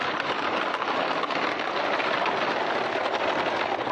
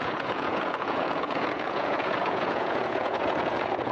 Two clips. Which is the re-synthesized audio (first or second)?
second